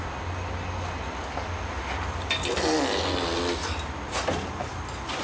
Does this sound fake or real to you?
real